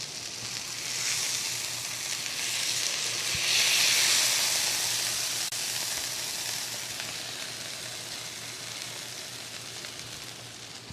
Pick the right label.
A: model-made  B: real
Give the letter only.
B